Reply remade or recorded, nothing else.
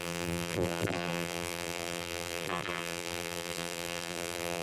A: remade